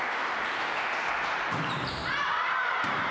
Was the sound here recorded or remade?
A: remade